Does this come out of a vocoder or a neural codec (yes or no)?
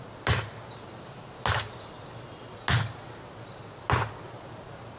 no